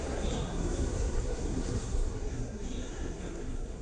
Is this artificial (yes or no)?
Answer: yes